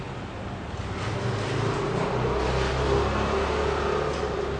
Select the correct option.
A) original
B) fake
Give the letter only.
A